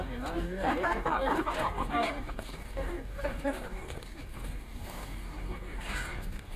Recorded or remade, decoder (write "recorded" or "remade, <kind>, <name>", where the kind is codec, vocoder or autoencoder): remade, codec, DAC